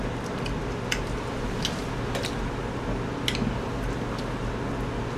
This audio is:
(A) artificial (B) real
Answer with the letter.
B